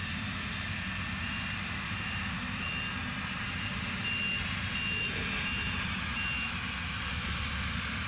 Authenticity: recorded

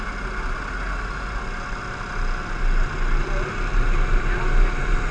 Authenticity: recorded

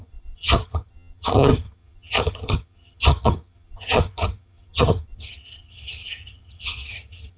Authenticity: remade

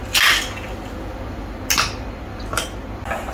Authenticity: recorded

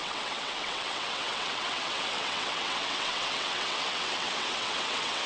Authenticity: remade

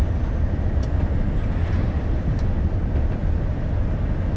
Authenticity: recorded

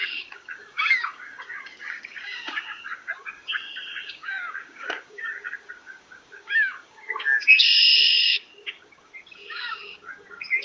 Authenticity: remade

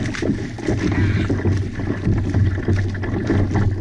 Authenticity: recorded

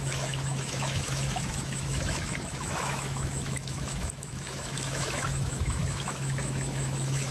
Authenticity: remade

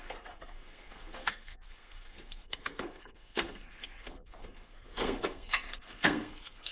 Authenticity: remade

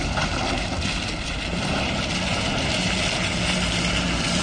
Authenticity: recorded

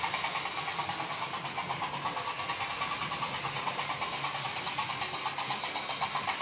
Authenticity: recorded